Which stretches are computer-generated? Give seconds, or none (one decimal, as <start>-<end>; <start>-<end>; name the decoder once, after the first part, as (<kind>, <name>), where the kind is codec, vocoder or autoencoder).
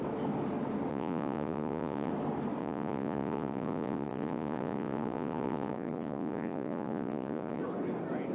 0.9-2.1 (vocoder, Vocos); 2.6-7.6